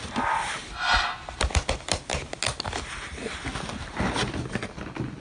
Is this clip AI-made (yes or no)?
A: no